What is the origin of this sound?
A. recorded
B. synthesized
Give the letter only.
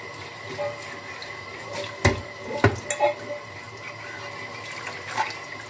A